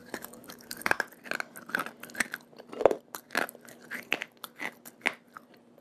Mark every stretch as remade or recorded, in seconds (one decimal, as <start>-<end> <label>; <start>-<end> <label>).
0.0-1.0 remade; 1.0-5.8 recorded